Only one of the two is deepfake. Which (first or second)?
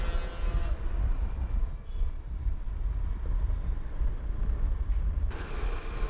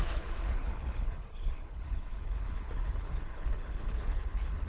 second